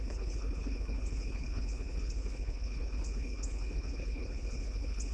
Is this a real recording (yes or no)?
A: no